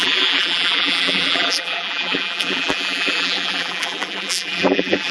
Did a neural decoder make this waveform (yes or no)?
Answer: yes